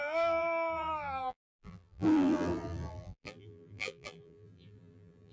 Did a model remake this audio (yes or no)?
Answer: yes